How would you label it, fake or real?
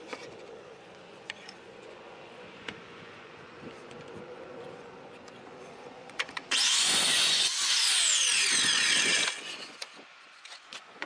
fake